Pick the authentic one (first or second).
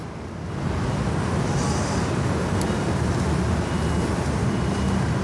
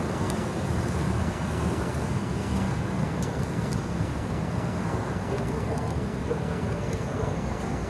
first